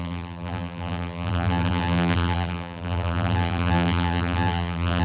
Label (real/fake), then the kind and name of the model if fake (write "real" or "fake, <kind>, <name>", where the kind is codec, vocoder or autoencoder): fake, vocoder, BigVGAN v2